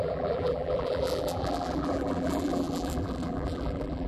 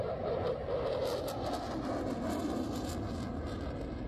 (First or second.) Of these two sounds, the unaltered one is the second